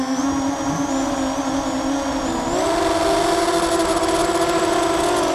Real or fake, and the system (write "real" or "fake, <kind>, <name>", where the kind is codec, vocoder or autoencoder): real